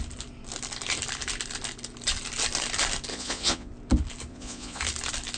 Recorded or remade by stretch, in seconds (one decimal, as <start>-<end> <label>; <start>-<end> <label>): 0.0-3.1 recorded; 3.1-3.7 remade; 3.7-4.3 recorded; 4.3-4.8 remade; 4.8-5.4 recorded